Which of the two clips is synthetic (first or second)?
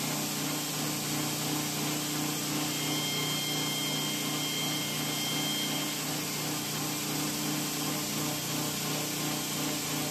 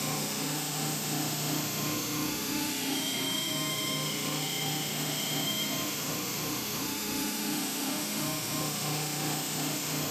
second